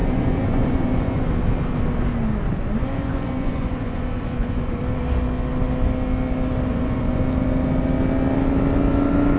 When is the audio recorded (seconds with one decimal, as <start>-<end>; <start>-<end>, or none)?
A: 1.3-2.8; 4.8-6.7; 7.2-9.4